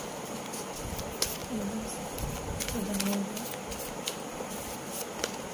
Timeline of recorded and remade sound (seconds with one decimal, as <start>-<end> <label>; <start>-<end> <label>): 0.0-5.5 recorded

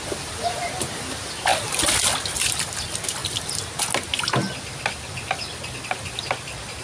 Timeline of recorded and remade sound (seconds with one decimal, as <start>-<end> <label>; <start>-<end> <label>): 0.0-6.8 recorded

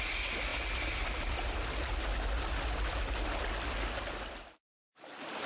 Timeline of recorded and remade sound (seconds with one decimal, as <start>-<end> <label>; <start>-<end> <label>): 0.0-5.5 recorded

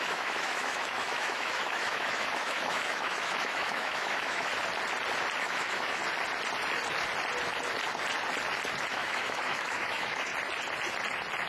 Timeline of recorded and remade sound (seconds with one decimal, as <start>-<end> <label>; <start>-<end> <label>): 0.0-4.5 remade; 4.5-5.5 recorded; 5.5-6.0 remade; 6.0-8.9 recorded; 8.9-10.3 remade; 10.3-11.5 recorded

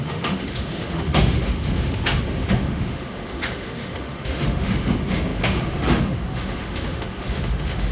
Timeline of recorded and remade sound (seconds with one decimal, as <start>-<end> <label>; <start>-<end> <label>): 0.0-7.9 remade

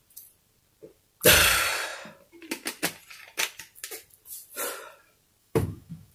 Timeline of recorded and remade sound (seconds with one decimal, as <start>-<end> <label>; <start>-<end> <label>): 0.0-5.4 recorded; 5.4-6.1 remade

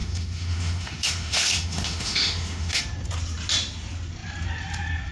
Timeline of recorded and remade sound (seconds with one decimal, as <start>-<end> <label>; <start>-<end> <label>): 0.0-2.8 remade; 2.8-5.1 recorded

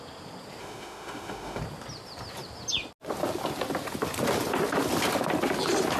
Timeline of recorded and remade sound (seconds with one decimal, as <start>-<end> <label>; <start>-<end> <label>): 0.0-0.6 recorded; 0.6-1.6 remade; 1.6-6.0 recorded